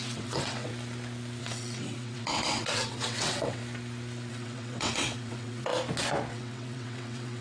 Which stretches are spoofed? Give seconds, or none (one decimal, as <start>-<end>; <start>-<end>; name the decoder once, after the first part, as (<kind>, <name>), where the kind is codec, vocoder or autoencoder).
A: 0.0-0.7 (vocoder, WaveNeXt); 1.4-3.6; 4.3-5.7; 6.3-7.4